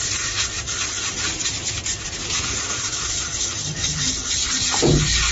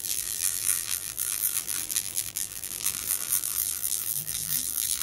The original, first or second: first